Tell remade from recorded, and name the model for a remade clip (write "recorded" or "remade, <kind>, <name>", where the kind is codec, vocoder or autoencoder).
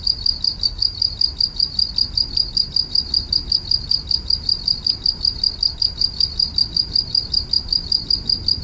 recorded